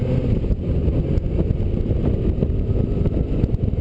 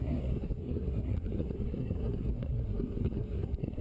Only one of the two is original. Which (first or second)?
first